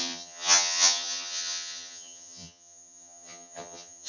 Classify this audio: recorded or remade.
remade